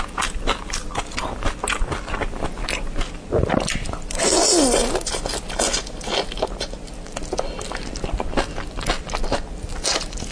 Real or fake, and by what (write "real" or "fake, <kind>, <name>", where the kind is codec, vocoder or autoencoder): real